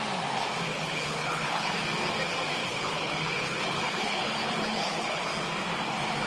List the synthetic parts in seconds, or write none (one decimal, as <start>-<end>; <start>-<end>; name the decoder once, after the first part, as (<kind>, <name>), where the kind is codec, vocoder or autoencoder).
0.7-1.8 (codec, HILCodec); 2.6-5.2